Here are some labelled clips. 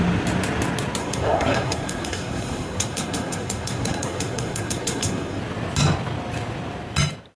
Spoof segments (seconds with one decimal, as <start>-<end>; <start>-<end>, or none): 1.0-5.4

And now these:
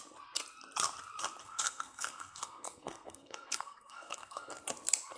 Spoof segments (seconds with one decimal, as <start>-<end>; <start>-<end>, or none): 1.4-4.5

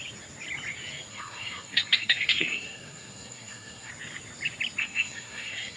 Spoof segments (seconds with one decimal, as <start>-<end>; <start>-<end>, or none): 1.1-3.9; 4.8-5.8